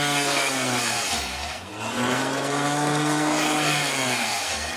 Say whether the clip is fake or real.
fake